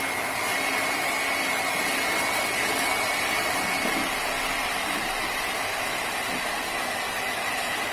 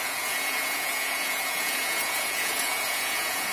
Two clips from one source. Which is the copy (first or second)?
second